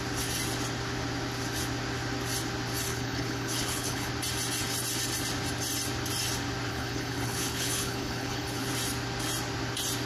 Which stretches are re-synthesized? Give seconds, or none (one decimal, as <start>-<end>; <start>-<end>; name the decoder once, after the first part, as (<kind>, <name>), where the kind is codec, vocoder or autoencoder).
2.9-4.1 (codec, HILCodec); 6.7-8.7